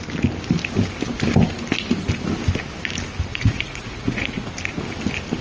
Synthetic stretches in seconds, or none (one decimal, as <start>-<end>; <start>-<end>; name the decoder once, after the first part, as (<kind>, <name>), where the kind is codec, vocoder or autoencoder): 3.3-4.5 (vocoder, Vocos)